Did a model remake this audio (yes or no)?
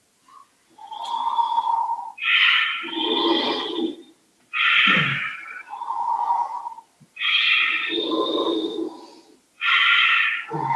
no